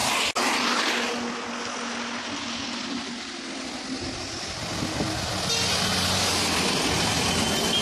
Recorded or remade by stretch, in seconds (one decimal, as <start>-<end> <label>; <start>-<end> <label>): 0.0-7.8 recorded